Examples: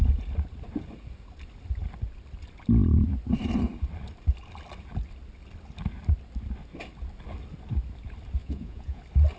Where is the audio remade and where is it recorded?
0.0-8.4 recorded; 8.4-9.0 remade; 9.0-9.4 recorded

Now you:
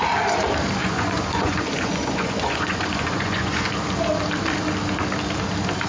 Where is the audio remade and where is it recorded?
0.0-0.8 recorded; 0.8-3.7 remade; 3.7-5.9 recorded

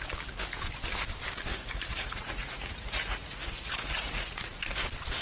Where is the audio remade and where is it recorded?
0.0-1.5 recorded; 1.5-4.6 remade; 4.6-5.2 recorded